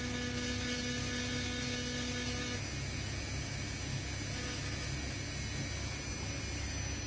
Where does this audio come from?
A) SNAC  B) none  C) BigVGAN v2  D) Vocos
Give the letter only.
B